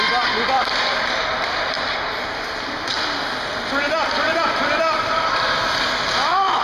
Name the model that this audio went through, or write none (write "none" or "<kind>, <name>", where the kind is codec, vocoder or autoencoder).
vocoder, BigVGAN v2